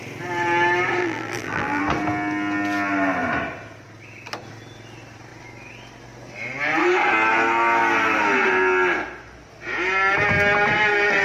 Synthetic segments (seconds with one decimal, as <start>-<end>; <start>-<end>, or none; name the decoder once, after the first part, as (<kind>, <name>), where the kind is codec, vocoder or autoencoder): 1.0-1.8 (vocoder, BigVGAN v2)